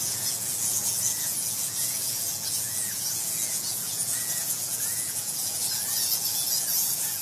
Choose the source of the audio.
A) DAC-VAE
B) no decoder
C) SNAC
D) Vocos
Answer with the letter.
D